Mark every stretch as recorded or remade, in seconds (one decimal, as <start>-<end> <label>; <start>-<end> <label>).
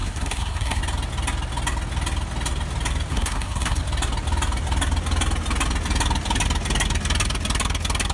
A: 0.0-0.8 remade; 0.8-3.1 recorded; 3.1-3.8 remade; 3.8-8.1 recorded